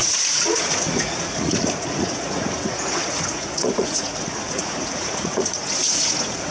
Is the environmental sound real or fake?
fake